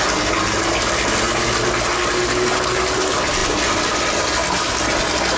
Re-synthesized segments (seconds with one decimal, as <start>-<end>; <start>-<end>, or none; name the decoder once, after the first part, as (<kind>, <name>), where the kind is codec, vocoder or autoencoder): none